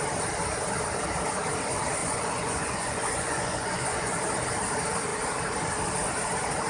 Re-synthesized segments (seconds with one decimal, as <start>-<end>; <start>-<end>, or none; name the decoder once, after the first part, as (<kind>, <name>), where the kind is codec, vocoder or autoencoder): 2.0-4.2 (vocoder, Vocos)